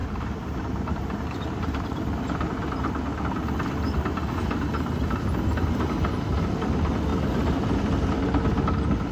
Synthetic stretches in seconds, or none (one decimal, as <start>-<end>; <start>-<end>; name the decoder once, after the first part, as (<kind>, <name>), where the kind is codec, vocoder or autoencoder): 0.0-3.2 (vocoder, BigVGAN v2)

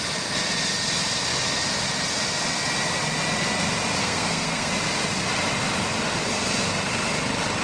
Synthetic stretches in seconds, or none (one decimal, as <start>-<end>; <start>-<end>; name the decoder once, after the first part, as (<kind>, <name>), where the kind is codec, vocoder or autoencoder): 4.0-4.7 (codec, SNAC)